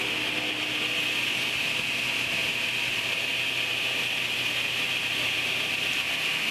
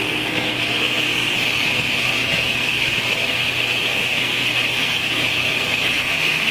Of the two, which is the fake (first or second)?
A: second